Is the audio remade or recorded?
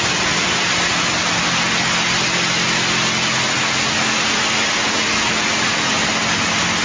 recorded